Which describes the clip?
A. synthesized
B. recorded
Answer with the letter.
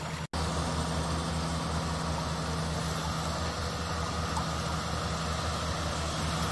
B